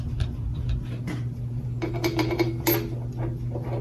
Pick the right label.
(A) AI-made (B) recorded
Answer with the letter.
B